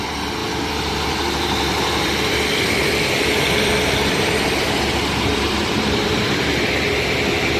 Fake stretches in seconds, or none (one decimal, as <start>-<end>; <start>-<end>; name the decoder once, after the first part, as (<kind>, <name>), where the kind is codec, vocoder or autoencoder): 0.4-4.8 (vocoder, BigVGAN v2); 5.3-6.4